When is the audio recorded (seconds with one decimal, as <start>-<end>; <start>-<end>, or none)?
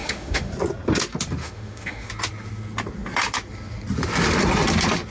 0.5-1.4; 2.1-5.1